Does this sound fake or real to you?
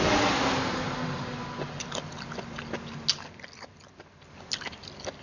real